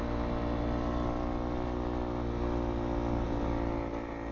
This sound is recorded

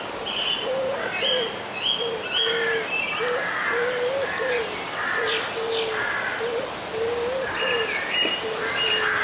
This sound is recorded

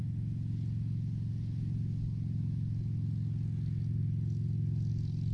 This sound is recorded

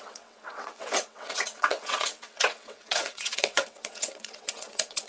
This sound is remade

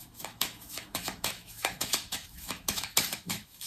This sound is remade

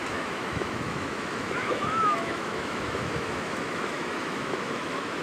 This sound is remade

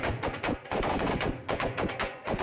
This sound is remade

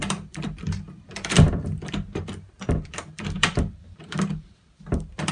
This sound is remade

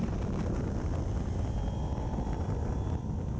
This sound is recorded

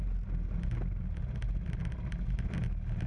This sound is recorded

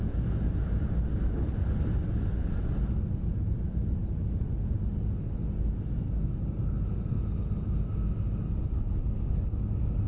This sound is recorded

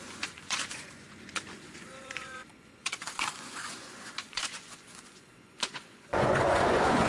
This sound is remade